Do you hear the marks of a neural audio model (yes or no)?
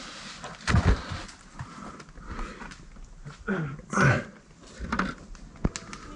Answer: no